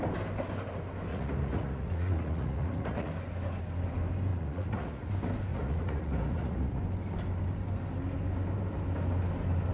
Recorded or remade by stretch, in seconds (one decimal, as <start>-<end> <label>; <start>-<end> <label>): 0.0-1.1 recorded; 1.1-3.1 remade; 3.1-4.3 recorded; 4.3-5.1 remade; 5.1-5.5 recorded; 5.5-6.8 remade; 6.8-9.7 recorded